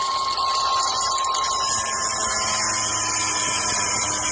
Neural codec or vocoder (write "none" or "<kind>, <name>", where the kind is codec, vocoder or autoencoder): none